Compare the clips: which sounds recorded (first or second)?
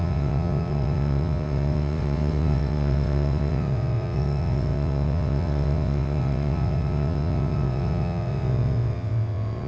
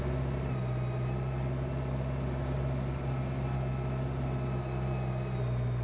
second